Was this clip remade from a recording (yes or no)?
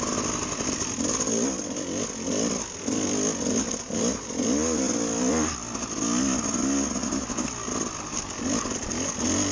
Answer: no